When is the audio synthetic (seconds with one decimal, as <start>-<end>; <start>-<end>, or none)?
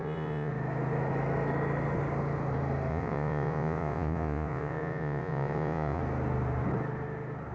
0.0-0.5; 2.9-6.0